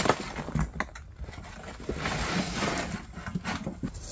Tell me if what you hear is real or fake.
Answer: real